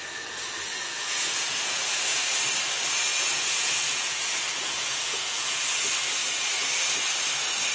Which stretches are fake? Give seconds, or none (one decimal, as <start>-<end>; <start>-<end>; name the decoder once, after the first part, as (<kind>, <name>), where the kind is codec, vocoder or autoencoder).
0.7-2.2 (vocoder, Vocos); 3.1-5.6